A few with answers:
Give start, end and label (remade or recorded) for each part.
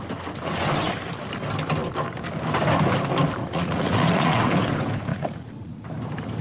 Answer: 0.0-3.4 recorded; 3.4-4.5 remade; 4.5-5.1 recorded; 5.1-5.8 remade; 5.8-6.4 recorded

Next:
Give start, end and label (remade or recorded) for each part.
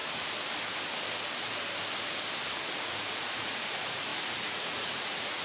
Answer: 0.0-2.5 recorded; 2.5-5.4 remade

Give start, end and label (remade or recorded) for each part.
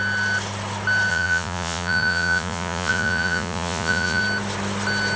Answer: 0.0-1.1 recorded; 1.1-4.2 remade; 4.2-5.2 recorded